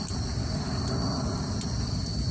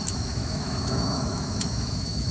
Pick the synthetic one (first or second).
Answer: second